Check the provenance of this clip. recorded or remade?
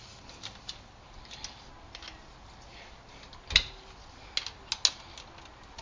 recorded